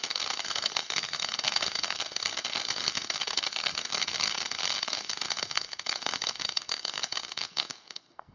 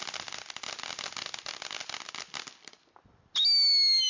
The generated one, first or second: first